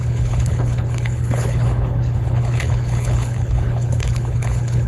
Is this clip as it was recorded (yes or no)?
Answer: no